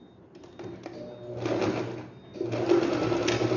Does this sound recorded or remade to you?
recorded